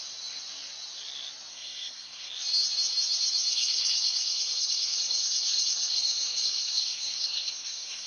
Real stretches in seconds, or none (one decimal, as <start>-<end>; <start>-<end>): 0.0-1.5; 2.3-3.5